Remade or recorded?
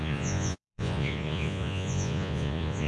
remade